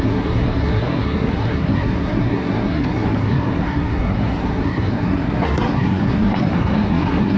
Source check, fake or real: fake